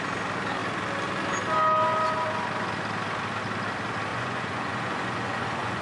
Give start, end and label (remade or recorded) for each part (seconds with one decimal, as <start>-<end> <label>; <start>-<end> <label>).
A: 0.0-4.1 recorded; 4.1-5.8 remade